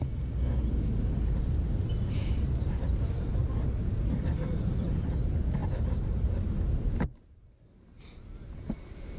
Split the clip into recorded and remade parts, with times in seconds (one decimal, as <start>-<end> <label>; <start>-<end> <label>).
0.0-2.2 recorded; 2.2-5.1 remade; 5.1-5.6 recorded; 5.6-7.4 remade; 7.4-9.2 recorded